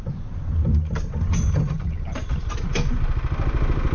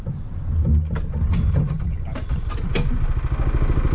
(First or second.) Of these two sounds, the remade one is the first